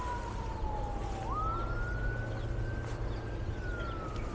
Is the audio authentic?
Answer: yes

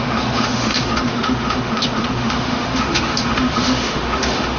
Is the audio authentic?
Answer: no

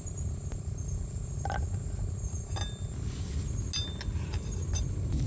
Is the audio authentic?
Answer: yes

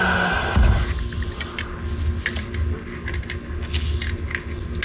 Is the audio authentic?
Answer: yes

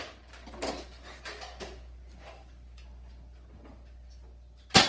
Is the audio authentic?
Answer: yes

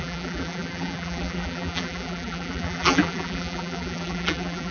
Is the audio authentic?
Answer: no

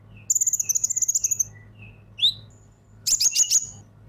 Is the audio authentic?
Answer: yes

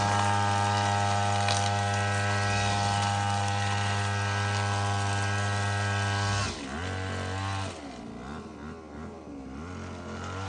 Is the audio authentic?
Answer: yes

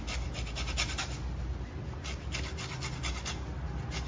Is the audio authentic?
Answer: yes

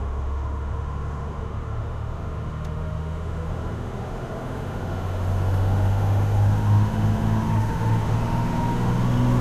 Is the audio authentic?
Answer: no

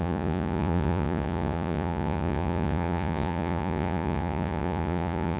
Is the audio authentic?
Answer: no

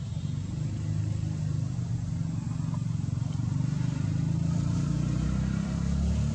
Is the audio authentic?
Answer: yes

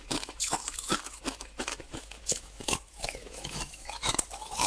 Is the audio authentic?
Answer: no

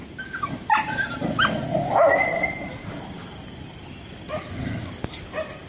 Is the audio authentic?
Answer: yes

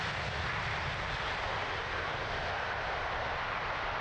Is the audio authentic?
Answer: yes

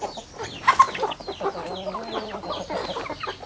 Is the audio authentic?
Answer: yes